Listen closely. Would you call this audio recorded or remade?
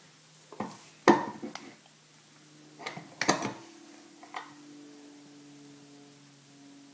recorded